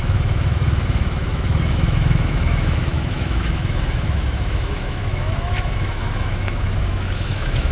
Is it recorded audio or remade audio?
remade